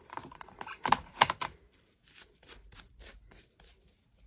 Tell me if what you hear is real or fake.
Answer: fake